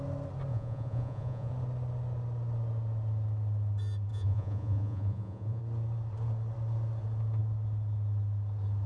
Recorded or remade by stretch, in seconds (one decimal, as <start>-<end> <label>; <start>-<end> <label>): 0.0-0.5 recorded; 0.5-1.5 remade; 1.5-4.1 recorded; 4.1-5.6 remade; 5.6-8.9 recorded